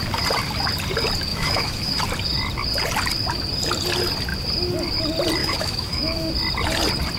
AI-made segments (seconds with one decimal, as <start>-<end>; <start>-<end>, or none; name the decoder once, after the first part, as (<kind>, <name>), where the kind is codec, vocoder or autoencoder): 1.3-2.0 (autoencoder, DAC-VAE); 5.4-6.3